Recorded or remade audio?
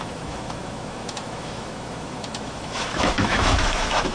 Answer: remade